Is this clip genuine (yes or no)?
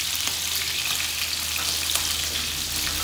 yes